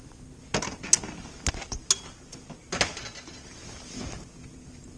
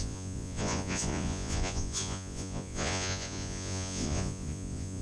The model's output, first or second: second